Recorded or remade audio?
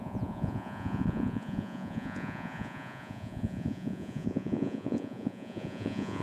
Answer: remade